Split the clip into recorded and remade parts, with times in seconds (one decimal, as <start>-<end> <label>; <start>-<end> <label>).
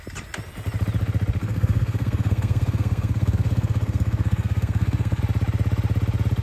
0.0-1.4 recorded; 1.4-5.2 remade; 5.2-6.4 recorded